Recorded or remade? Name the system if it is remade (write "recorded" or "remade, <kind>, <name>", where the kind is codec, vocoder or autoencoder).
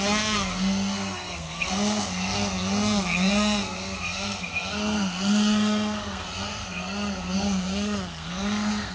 remade, codec, SNAC